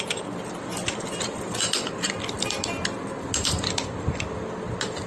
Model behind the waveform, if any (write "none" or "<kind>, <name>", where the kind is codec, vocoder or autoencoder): none